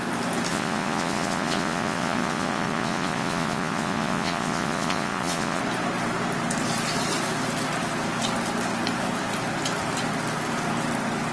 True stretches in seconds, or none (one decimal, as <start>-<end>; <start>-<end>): 0.0-0.5; 5.6-11.3